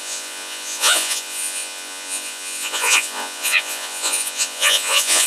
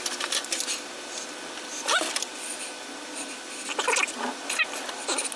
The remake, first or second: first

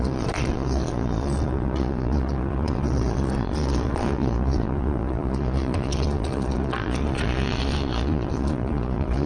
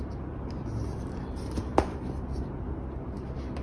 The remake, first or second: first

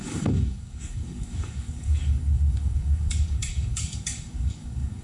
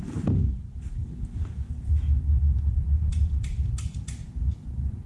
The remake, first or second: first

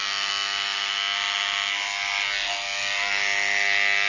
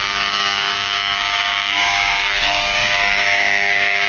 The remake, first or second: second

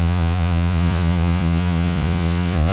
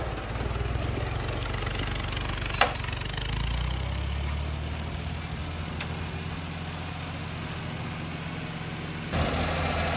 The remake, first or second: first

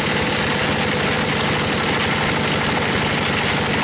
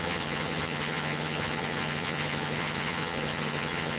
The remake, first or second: second